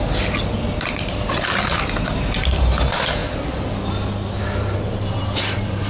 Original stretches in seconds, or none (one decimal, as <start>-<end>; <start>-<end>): 0.0-5.9